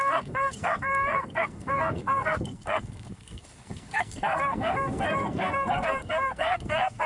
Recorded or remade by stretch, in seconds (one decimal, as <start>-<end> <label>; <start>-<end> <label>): 0.0-7.1 remade